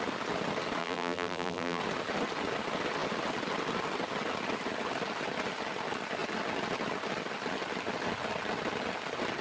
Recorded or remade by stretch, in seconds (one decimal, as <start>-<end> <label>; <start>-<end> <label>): 0.0-0.8 recorded; 0.8-1.8 remade; 1.8-9.4 recorded